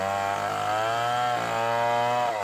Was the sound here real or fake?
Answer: real